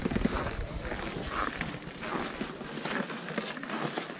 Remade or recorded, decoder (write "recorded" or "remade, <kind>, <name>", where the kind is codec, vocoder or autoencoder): recorded